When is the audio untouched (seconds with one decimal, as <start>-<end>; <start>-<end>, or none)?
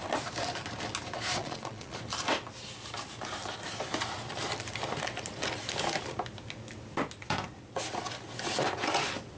0.0-1.4; 2.0-9.4